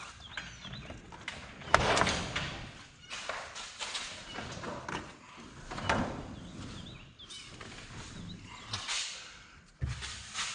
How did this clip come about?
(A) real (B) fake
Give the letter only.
A